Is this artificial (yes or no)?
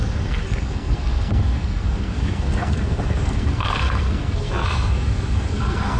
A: yes